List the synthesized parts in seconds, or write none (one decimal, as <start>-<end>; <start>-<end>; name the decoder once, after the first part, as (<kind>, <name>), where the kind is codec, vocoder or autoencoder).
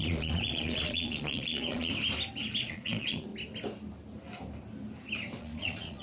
0.0-1.9 (vocoder, Vocos); 2.6-3.3; 5.4-6.0